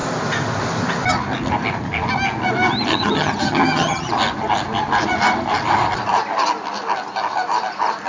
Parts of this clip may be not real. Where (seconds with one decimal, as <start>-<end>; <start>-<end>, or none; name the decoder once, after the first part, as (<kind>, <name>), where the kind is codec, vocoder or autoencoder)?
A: 2.9-4.1 (vocoder, HiFi-GAN)